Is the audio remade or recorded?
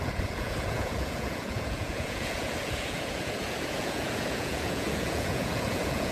remade